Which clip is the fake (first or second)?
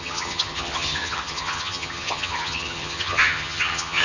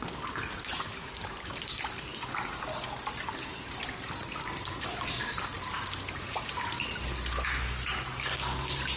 first